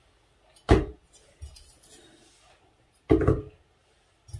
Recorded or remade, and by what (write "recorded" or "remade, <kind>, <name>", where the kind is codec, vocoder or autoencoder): recorded